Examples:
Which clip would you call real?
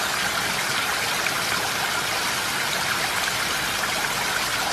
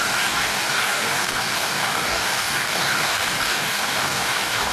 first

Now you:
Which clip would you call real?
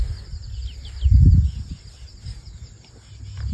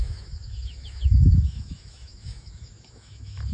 first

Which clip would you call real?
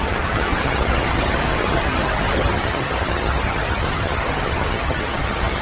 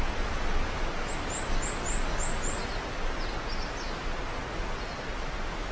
second